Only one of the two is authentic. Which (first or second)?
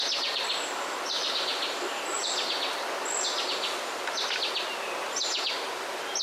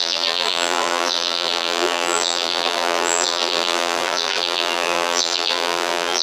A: first